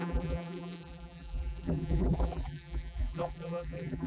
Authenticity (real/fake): fake